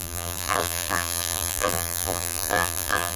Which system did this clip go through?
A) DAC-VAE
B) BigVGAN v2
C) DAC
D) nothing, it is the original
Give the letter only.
B